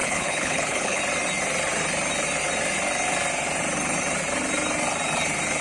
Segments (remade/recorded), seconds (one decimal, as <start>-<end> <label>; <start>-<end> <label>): 0.0-1.0 remade; 1.0-5.6 recorded